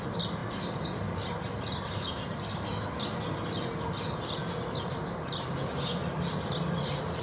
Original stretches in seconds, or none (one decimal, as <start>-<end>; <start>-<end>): 0.0-7.2